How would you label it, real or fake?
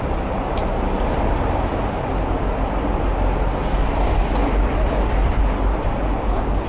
real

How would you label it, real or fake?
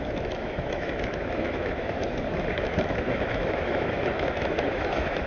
fake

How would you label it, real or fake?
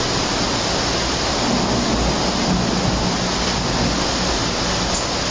real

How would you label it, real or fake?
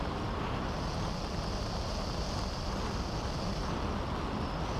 real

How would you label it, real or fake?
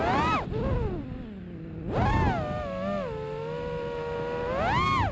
real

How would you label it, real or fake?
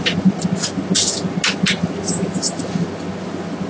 real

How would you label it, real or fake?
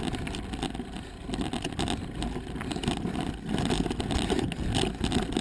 real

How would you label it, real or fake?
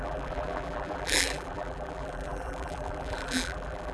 fake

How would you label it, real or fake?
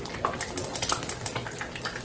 real